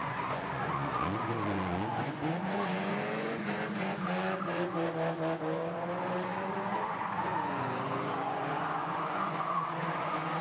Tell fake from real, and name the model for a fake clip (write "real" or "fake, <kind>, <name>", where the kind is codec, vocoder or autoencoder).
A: fake, vocoder, Vocos